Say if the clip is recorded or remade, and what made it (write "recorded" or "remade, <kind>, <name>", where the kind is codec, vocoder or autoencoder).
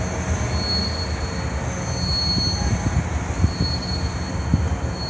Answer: recorded